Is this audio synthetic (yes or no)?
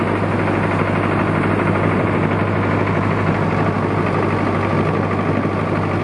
no